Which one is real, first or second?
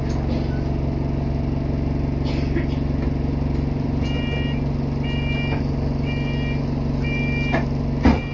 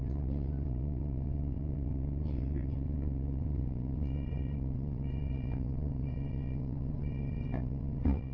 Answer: first